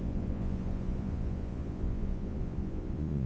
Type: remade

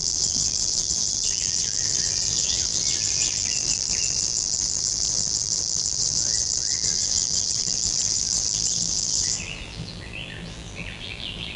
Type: remade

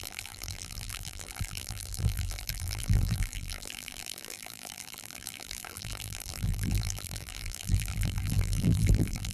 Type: remade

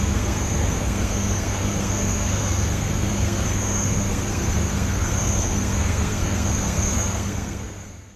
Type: remade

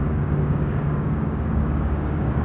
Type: remade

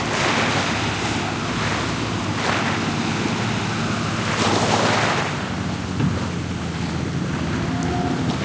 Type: recorded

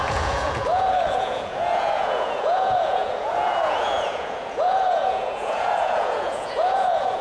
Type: remade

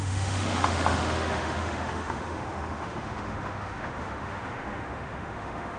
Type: remade